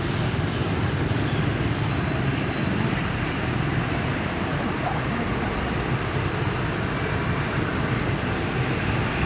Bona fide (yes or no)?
no